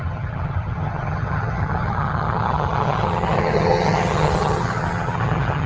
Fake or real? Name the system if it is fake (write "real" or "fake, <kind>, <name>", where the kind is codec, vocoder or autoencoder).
fake, vocoder, HiFi-GAN